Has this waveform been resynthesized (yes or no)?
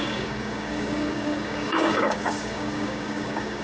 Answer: yes